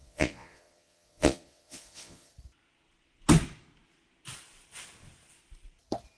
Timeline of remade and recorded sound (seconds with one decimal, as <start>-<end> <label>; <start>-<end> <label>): 0.0-2.3 remade; 2.3-6.2 recorded